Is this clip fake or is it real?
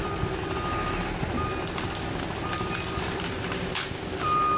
real